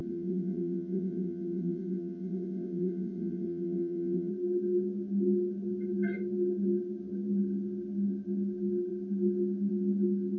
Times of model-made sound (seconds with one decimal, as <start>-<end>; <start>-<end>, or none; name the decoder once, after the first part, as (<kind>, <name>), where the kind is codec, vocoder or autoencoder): 0.0-4.3 (vocoder, WaveNeXt)